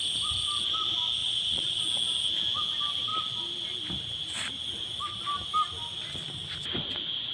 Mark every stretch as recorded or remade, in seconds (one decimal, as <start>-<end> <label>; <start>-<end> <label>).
0.0-1.2 recorded; 1.2-1.8 remade; 1.8-7.3 recorded